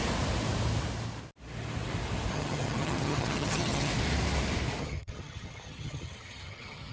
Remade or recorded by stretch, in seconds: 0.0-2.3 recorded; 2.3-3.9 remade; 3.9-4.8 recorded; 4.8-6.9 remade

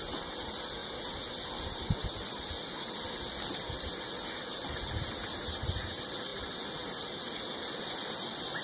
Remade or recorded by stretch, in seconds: 0.0-8.6 recorded